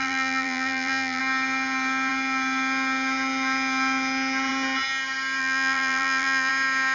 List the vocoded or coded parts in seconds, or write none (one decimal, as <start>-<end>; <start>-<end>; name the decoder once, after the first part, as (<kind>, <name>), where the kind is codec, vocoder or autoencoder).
0.0-1.2 (vocoder, BigVGAN v2); 5.4-6.5